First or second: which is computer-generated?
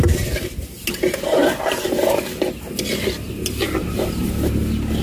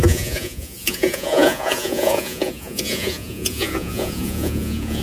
second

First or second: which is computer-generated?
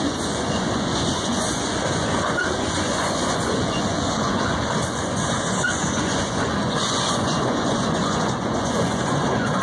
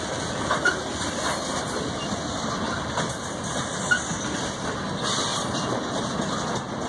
first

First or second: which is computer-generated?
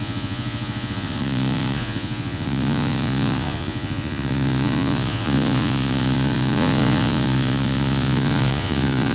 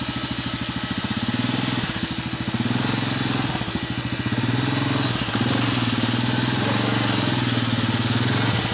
first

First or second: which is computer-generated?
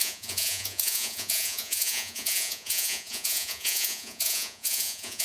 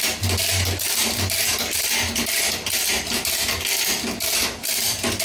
first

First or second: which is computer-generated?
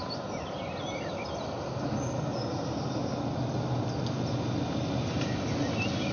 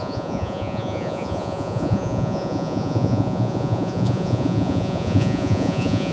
second